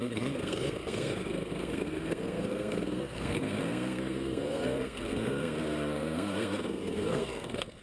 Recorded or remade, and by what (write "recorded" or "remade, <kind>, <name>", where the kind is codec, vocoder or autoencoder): remade, codec, SNAC